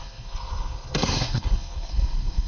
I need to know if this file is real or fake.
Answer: fake